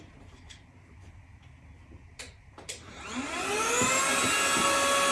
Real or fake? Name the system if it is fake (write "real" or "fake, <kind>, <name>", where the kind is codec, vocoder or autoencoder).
real